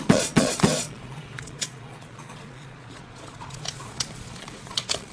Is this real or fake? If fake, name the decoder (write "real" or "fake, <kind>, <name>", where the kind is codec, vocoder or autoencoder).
fake, vocoder, Vocos